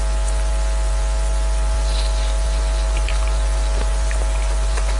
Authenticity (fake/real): real